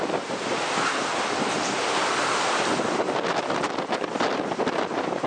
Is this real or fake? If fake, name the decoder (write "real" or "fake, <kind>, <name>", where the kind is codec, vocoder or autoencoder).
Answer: real